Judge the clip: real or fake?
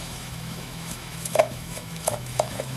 fake